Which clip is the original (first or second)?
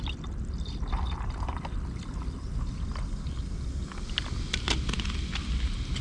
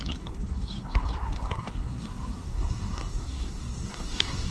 first